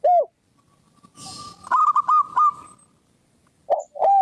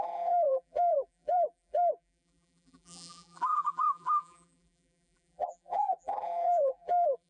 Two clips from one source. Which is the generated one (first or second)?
second